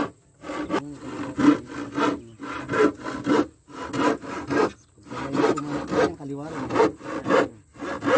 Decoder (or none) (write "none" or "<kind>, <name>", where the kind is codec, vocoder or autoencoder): none